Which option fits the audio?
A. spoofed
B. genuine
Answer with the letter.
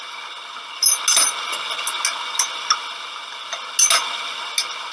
B